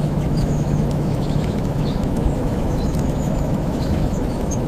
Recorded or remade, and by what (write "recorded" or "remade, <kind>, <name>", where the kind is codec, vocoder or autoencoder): remade, autoencoder, DAC-VAE